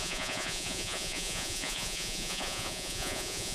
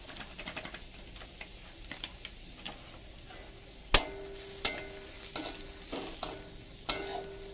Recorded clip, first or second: second